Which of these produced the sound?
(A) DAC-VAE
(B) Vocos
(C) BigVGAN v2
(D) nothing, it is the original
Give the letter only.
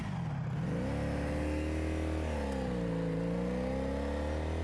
D